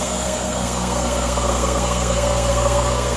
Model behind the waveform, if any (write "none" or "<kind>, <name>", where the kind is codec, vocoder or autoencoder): codec, SNAC